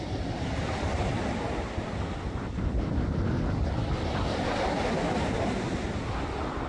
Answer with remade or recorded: recorded